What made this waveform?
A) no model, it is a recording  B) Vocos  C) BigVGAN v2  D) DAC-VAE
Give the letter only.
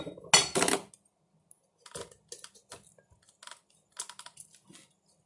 A